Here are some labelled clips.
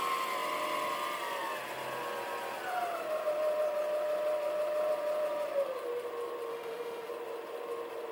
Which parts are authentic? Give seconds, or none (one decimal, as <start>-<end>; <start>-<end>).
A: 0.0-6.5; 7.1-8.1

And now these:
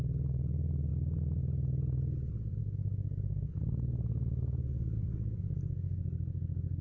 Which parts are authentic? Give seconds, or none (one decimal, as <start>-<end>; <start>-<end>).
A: 0.0-2.6

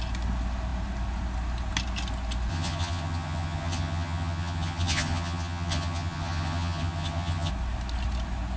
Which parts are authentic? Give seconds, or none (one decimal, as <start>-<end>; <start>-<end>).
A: 0.0-2.5; 7.5-8.6